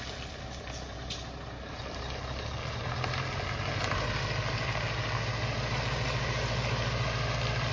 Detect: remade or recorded recorded